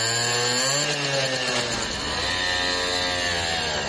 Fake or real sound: real